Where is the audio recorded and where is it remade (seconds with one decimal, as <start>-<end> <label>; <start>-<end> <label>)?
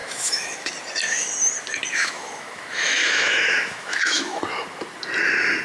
0.0-0.7 remade; 0.7-1.9 recorded; 1.9-4.4 remade; 4.4-5.6 recorded